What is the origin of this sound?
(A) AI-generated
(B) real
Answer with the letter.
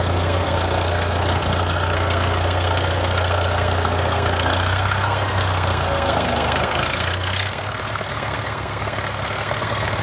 A